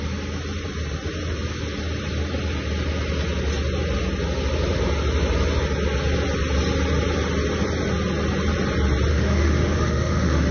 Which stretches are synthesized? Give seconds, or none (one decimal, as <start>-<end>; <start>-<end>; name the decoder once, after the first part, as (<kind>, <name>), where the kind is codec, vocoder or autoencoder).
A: 9.1-10.5 (autoencoder, DAC-VAE)

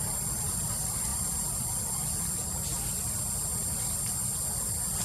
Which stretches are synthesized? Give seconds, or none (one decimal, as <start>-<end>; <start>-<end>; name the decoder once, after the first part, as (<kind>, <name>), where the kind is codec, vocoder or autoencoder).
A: none

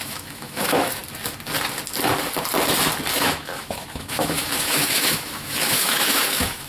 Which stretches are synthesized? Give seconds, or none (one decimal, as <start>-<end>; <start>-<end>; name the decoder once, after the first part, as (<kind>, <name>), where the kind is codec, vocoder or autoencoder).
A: 0.0-1.0 (autoencoder, DAC-VAE); 3.1-6.7

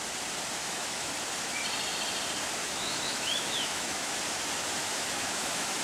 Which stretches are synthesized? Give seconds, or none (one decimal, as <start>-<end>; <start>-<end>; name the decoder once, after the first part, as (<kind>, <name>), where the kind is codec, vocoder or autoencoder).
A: 0.6-1.1 (autoencoder, DAC-VAE); 2.6-4.1; 4.8-5.8

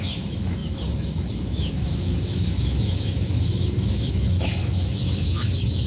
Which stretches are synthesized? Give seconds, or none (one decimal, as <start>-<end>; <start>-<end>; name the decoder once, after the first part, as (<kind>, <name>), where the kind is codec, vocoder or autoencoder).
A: 0.0-5.9 (autoencoder, DAC-VAE)

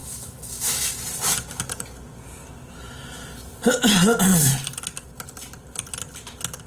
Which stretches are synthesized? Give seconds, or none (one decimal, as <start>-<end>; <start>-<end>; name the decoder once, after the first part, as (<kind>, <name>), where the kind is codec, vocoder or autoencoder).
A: 0.0-1.0 (autoencoder, DAC-VAE)